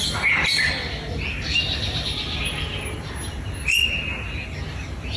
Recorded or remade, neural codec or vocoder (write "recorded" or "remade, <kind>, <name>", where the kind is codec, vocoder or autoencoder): recorded